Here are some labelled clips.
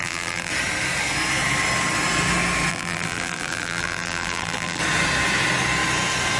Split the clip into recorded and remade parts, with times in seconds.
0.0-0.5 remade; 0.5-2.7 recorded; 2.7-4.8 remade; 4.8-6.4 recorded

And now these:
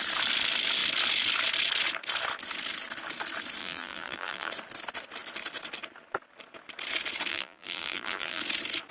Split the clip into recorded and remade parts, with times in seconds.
0.0-3.6 recorded; 3.6-4.5 remade; 4.5-7.3 recorded; 7.3-8.4 remade; 8.4-8.9 recorded

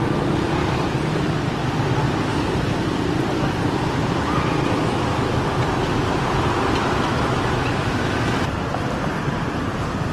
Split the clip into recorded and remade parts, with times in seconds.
0.0-2.3 recorded; 2.3-6.9 remade; 6.9-7.6 recorded; 7.6-10.1 remade